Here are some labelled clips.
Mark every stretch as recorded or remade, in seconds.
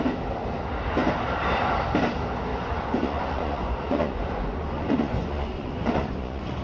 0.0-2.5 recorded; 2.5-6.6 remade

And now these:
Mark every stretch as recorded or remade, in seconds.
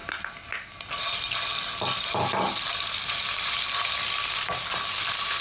0.0-5.4 recorded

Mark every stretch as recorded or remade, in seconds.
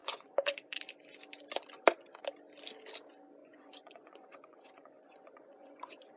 0.0-0.8 remade; 0.8-3.4 recorded; 3.4-6.2 remade